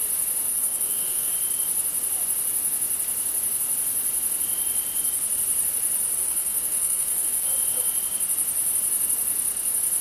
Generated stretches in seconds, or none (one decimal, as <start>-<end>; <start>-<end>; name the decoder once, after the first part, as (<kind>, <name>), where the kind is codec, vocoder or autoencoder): 0.5-1.3 (codec, SNAC); 6.2-7.5